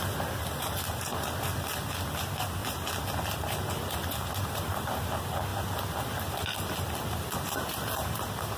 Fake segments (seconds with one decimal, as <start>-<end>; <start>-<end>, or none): 0.0-2.6; 3.7-5.5; 6.5-8.6